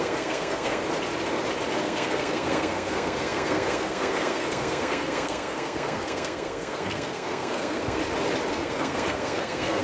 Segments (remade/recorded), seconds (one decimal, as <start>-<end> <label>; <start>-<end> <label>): 0.0-0.8 remade; 0.8-1.8 recorded; 1.8-8.0 remade; 8.0-8.5 recorded; 8.5-9.8 remade